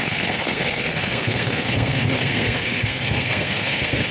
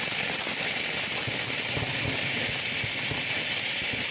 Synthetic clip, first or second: first